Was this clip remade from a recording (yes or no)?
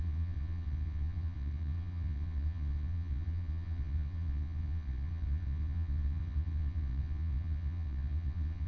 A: yes